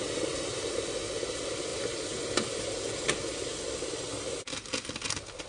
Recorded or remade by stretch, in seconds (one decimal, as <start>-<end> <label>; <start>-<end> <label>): 0.0-5.5 recorded